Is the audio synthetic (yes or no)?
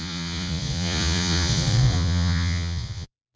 yes